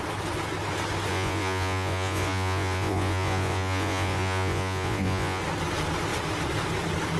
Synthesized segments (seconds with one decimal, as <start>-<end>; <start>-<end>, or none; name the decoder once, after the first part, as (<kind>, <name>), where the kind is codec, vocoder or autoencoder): 1.1-5.4 (vocoder, Vocos)